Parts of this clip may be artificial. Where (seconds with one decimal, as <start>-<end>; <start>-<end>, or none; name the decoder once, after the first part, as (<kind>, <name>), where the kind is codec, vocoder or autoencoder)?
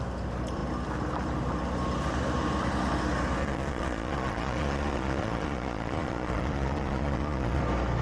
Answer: 3.4-7.6 (vocoder, Vocos)